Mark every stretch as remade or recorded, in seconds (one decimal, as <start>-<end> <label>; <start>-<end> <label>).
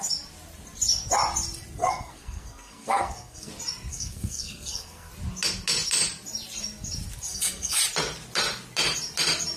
0.0-1.8 recorded; 1.8-3.5 remade; 3.5-3.9 recorded; 3.9-5.1 remade; 5.1-7.3 recorded; 7.3-7.8 remade; 7.8-9.6 recorded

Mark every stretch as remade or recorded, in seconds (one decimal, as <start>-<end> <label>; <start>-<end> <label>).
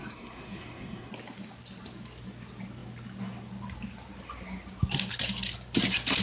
0.0-1.1 remade; 1.1-6.2 recorded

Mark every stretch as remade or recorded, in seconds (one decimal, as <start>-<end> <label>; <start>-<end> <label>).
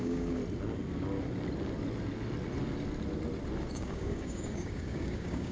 0.0-0.4 remade; 0.4-3.7 recorded; 3.7-5.5 remade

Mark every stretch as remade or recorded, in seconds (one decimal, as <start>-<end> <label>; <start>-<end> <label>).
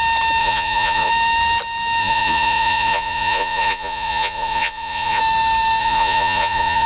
0.0-0.4 recorded; 0.4-1.1 remade; 1.1-2.0 recorded; 2.0-5.2 remade; 5.2-5.8 recorded; 5.8-6.9 remade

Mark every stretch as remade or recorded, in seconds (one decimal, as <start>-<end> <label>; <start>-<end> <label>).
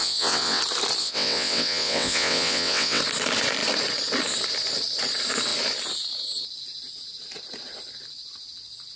0.0-0.6 remade; 0.6-1.0 recorded; 1.0-3.0 remade; 3.0-9.0 recorded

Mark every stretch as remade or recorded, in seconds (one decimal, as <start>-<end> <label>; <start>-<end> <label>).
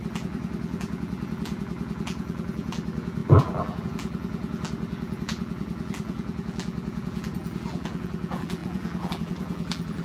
0.0-10.0 remade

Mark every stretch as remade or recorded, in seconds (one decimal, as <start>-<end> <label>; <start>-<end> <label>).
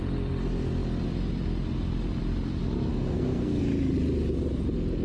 0.0-2.9 recorded; 2.9-3.6 remade; 3.6-5.0 recorded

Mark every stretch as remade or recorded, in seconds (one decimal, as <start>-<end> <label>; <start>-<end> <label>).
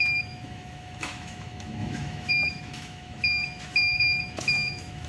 0.0-5.1 remade